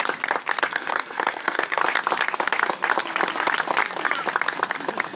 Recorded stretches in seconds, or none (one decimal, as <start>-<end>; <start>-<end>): 0.0-0.7; 1.8-5.2

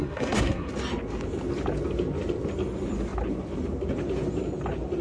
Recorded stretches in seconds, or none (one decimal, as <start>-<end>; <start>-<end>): 0.7-5.0

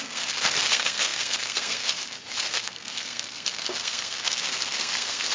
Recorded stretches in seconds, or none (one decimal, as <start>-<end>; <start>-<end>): none

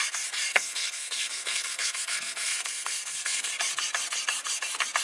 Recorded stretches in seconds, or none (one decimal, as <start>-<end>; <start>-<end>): 0.0-0.5; 3.5-5.0

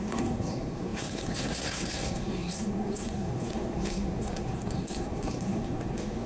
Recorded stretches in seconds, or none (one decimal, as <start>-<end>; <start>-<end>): none

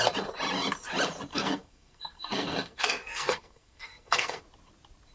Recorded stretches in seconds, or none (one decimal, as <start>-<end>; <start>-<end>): 0.0-1.3; 4.4-5.1